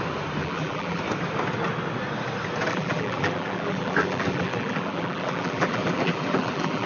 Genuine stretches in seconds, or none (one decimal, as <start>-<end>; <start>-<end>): 0.0-0.4; 1.0-2.7